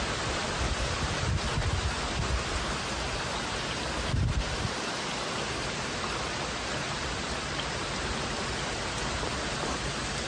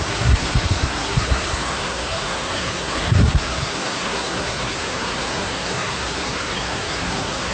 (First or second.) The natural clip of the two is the first